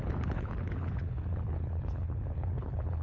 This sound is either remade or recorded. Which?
remade